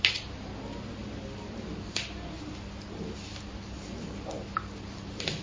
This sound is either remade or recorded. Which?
recorded